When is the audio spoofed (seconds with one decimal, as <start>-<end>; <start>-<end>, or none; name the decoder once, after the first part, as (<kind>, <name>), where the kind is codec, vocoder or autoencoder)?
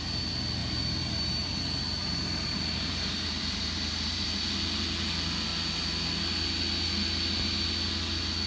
0.6-1.5 (vocoder, BigVGAN v2); 2.0-4.3